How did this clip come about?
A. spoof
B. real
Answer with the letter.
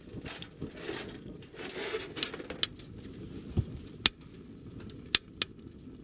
B